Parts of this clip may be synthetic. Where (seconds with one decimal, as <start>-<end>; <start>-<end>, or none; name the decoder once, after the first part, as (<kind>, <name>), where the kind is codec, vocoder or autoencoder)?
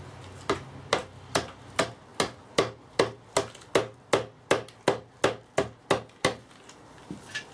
none